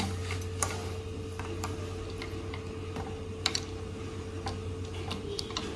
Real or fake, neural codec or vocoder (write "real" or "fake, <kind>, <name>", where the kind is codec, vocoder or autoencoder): real